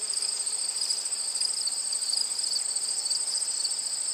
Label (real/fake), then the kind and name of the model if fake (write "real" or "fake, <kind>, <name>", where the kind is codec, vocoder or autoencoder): real